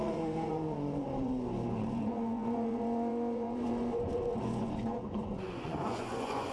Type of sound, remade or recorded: remade